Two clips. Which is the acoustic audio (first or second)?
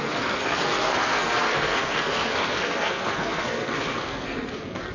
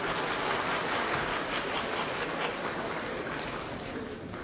second